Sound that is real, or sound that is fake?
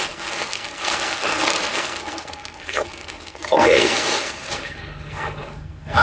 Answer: fake